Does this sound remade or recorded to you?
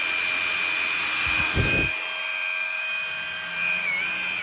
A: recorded